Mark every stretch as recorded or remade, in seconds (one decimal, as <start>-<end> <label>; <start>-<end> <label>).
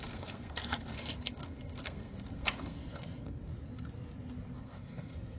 0.0-3.5 remade; 3.5-4.6 recorded; 4.6-5.4 remade